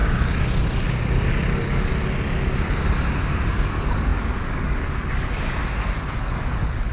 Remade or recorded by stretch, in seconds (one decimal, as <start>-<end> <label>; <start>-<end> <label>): 0.0-1.5 recorded; 1.5-1.9 remade; 1.9-3.5 recorded; 3.5-5.6 remade; 5.6-6.2 recorded; 6.2-6.9 remade